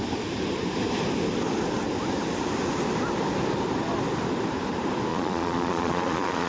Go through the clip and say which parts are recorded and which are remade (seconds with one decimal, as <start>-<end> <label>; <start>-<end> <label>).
0.0-5.1 recorded; 5.1-6.5 remade